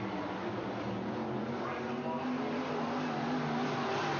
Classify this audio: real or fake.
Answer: real